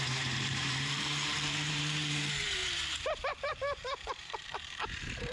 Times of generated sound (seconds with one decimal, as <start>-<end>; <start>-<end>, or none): 0.0-5.3